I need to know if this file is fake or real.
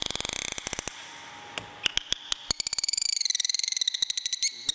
real